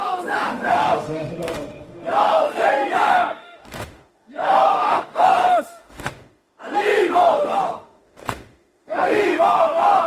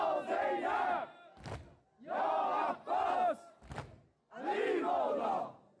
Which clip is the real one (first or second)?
second